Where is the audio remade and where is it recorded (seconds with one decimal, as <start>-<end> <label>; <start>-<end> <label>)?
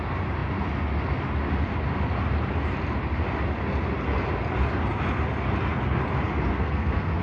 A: 0.0-6.5 recorded; 6.5-7.2 remade